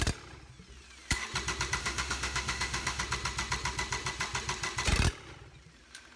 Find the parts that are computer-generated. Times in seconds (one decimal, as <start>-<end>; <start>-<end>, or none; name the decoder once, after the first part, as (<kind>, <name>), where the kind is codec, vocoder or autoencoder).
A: 1.8-3.0 (autoencoder, DAC-VAE)